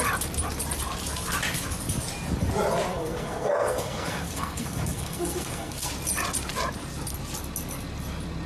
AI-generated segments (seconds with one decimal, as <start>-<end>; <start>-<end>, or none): 2.9-5.9

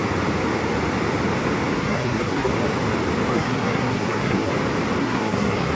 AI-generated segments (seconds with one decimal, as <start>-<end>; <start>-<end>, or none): 1.7-2.5; 3.3-4.5; 5.0-5.7